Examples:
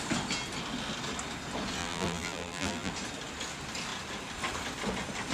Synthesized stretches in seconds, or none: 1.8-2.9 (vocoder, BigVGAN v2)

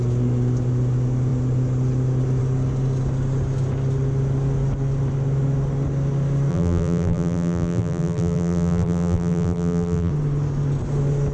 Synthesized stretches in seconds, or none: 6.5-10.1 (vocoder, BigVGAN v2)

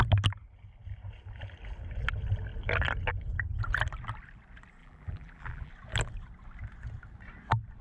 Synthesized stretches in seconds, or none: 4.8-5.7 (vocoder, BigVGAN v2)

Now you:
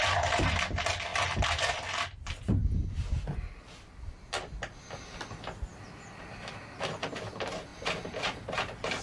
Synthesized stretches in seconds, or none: 7.7-9.0 (vocoder, BigVGAN v2)

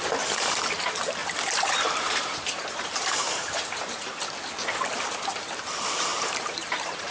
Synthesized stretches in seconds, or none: 1.2-4.2 (vocoder, BigVGAN v2); 6.1-7.1

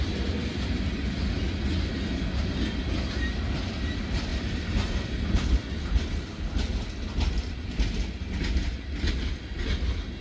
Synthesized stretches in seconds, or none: 4.3-5.1 (vocoder, BigVGAN v2)

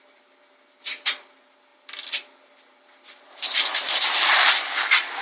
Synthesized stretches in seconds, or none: 1.7-4.5 (vocoder, BigVGAN v2)

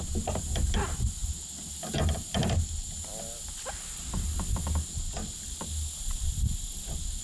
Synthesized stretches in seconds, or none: none